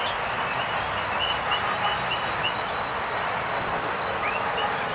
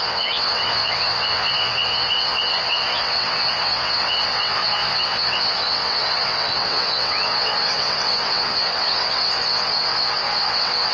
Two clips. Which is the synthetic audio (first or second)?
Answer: second